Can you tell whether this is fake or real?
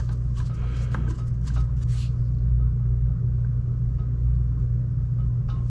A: real